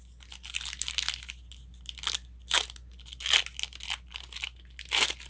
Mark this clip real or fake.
real